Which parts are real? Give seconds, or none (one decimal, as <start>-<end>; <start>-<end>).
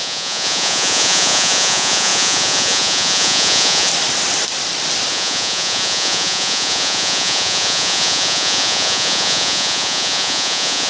3.9-5.1